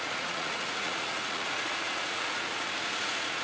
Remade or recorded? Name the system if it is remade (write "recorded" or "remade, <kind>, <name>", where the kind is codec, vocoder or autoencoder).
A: remade, vocoder, Vocos